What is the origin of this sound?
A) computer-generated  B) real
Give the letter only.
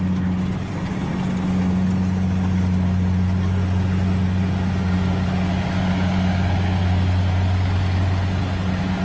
B